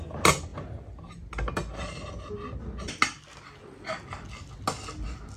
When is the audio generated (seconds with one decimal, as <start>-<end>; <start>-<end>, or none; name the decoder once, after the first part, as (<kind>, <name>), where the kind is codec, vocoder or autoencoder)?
0.5-1.0 (vocoder, BigVGAN v2)